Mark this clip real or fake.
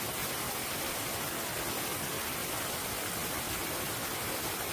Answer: real